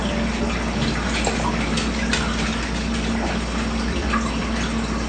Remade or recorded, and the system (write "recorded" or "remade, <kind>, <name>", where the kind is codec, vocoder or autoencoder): recorded